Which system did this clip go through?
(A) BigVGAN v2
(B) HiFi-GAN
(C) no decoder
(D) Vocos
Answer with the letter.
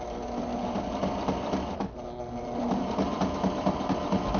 C